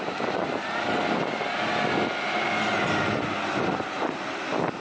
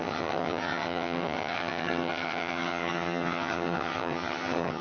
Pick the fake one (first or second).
second